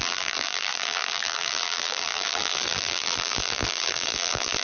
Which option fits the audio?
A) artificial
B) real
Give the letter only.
A